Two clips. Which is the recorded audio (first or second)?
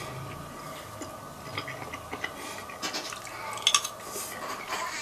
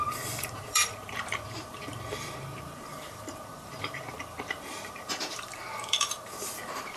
first